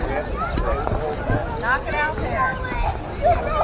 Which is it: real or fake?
real